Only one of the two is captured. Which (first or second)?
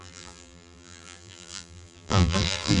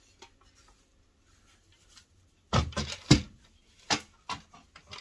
second